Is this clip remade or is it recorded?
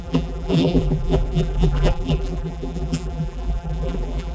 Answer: remade